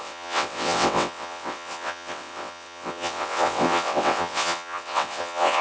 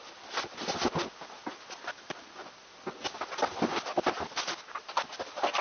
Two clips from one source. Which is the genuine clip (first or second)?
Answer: second